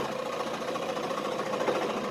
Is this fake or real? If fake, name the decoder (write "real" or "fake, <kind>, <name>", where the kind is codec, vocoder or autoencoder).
real